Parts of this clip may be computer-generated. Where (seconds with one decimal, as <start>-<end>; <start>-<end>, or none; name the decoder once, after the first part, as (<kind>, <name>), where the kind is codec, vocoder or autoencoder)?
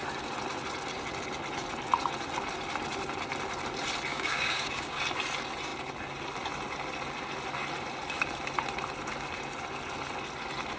4.1-5.0 (codec, DAC)